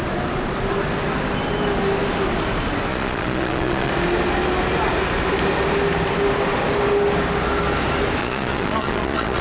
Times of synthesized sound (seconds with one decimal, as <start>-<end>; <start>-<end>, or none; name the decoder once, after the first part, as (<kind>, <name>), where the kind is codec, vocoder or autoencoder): 2.9-3.9 (vocoder, Vocos); 8.2-9.4